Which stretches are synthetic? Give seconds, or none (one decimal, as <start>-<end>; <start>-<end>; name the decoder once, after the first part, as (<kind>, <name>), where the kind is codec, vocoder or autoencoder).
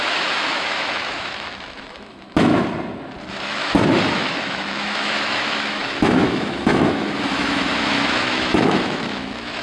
0.0-2.5 (autoencoder, DAC-VAE); 3.3-9.6